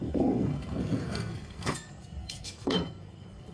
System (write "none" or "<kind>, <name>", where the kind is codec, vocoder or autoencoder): codec, SNAC